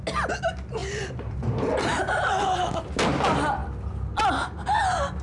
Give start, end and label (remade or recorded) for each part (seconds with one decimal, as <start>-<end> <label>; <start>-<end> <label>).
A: 0.0-0.8 recorded; 0.8-2.9 remade; 2.9-5.2 recorded